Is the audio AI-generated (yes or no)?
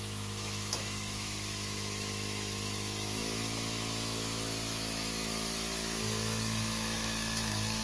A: yes